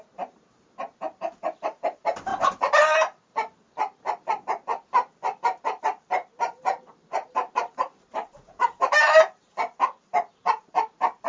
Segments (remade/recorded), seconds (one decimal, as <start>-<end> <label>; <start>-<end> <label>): 0.0-2.3 remade; 2.3-5.8 recorded; 5.8-11.3 remade